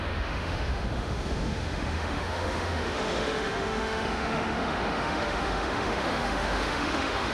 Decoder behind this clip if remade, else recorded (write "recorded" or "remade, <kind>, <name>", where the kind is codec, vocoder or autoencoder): remade, autoencoder, DAC-VAE